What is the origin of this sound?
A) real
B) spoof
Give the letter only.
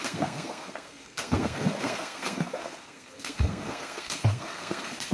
B